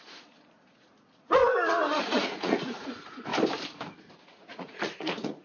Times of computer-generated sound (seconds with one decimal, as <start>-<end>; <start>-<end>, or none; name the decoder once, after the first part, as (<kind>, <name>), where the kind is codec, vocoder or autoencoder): 0.0-1.4 (vocoder, Vocos); 2.0-3.3; 4.2-5.4